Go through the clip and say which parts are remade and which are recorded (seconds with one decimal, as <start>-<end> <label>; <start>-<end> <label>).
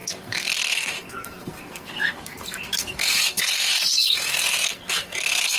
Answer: 0.0-5.6 remade